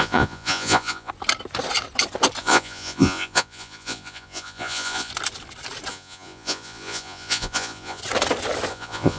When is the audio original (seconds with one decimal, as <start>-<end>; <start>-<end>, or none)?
1.1-2.4; 5.1-5.9; 8.0-8.7